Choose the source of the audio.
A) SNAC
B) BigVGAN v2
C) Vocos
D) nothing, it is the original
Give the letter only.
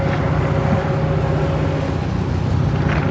D